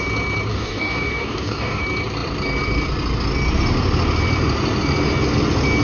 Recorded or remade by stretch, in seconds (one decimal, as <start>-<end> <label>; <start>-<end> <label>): 0.0-0.5 recorded; 0.5-1.8 remade; 1.8-5.8 recorded